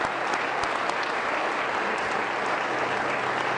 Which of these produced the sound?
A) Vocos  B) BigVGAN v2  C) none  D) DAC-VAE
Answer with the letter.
C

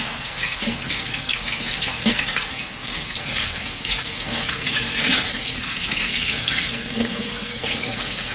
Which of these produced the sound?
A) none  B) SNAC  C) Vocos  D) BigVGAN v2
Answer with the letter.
B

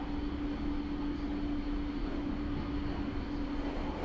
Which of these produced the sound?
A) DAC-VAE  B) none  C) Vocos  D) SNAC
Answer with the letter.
B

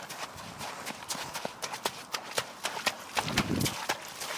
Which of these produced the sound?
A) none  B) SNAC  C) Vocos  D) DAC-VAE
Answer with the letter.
A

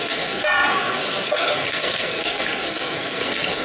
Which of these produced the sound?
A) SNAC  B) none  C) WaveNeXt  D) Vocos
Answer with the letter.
A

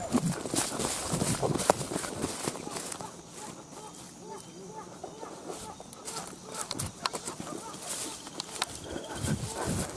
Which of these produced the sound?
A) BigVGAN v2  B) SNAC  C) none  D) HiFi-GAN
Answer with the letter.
C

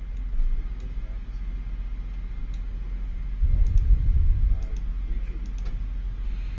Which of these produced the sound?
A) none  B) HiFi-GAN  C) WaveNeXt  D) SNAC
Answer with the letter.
A